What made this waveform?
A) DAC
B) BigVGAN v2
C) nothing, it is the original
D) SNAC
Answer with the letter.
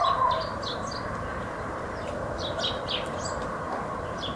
B